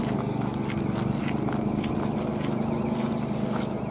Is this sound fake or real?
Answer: real